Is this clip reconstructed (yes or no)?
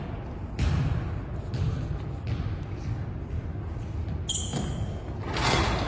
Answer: no